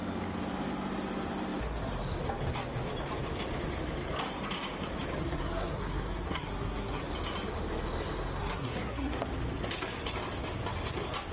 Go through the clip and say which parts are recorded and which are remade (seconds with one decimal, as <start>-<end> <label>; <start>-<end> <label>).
0.0-5.2 recorded; 5.2-7.0 remade; 7.0-8.4 recorded; 8.4-9.2 remade; 9.2-11.3 recorded